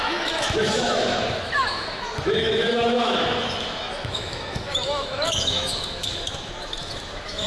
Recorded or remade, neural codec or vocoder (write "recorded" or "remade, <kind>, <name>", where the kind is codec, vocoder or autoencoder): remade, autoencoder, DAC-VAE